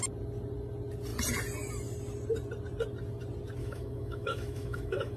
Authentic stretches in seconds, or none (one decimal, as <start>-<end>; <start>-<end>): 0.0-3.6